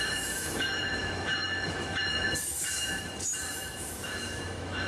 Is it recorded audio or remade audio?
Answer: remade